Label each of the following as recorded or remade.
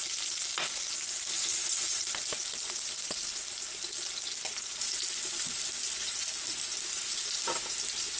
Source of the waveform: recorded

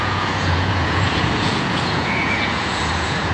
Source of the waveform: remade